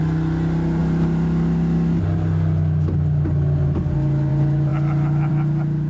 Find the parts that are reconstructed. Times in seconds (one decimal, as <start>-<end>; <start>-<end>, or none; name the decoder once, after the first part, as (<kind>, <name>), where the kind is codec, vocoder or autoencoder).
none